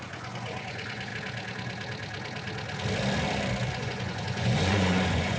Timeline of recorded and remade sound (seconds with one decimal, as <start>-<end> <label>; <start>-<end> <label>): 0.0-1.1 remade; 1.1-3.7 recorded; 3.7-5.4 remade